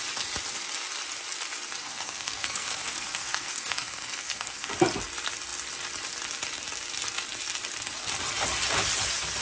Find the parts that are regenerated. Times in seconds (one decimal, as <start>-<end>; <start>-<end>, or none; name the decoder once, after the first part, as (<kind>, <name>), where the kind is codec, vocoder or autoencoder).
1.8-4.7 (codec, SNAC)